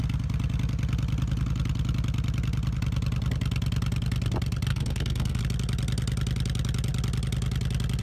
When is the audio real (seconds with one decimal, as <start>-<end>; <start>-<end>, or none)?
0.0-4.7; 5.4-8.0